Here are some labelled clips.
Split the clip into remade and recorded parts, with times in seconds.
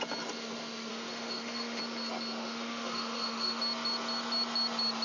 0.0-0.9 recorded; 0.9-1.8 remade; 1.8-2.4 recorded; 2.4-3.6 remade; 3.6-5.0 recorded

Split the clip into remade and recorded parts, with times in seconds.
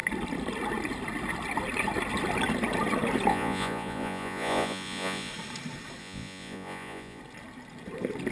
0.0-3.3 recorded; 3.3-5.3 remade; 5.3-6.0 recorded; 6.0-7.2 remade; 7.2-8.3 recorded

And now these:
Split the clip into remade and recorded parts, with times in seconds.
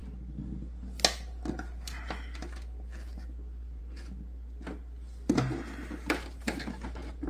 0.0-7.3 recorded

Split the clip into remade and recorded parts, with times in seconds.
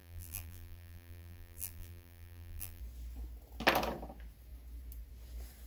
0.0-2.8 remade; 2.8-5.7 recorded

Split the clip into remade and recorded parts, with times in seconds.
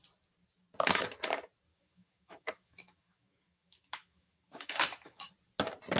0.0-1.7 recorded; 1.7-5.3 remade; 5.3-6.0 recorded